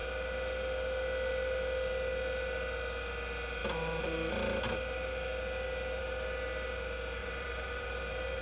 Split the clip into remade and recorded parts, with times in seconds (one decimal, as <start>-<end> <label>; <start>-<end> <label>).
0.0-7.2 recorded; 7.2-8.4 remade